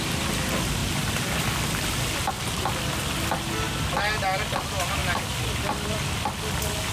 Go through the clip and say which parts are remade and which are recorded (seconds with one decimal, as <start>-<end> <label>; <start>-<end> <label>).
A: 0.0-0.8 recorded; 0.8-2.3 remade; 2.3-5.0 recorded; 5.0-6.2 remade; 6.2-6.9 recorded